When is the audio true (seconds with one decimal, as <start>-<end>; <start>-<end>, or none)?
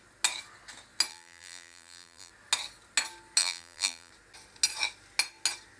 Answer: 0.0-1.1; 2.3-3.4; 4.1-5.8